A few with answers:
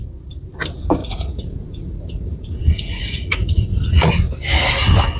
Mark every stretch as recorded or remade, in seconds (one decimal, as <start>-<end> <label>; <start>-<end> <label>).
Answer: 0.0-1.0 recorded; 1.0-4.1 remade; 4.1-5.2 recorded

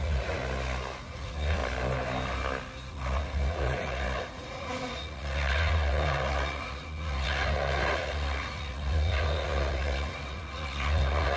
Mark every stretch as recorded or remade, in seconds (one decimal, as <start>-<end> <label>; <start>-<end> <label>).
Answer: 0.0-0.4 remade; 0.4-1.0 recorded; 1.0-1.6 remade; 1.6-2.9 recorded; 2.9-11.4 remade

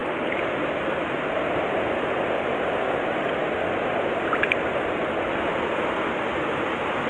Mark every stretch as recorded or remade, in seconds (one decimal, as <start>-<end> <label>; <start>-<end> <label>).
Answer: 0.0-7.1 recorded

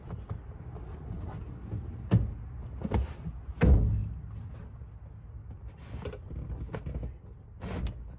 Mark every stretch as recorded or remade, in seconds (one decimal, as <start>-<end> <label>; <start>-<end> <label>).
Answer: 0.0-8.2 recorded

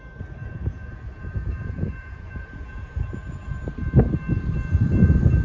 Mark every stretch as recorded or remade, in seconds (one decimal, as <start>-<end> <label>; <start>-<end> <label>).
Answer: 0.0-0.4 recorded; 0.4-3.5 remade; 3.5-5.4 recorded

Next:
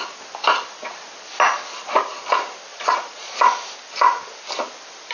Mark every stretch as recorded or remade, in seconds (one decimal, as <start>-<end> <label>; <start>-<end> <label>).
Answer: 0.0-2.7 recorded; 2.7-3.3 remade; 3.3-5.1 recorded